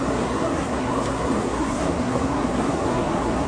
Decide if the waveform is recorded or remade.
remade